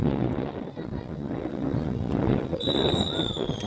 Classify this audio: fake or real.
fake